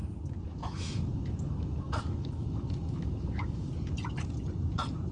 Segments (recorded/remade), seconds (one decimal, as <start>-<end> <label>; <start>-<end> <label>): 0.0-0.6 recorded; 0.6-3.7 remade; 3.7-5.1 recorded